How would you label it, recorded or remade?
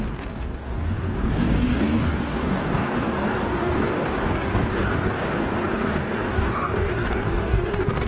remade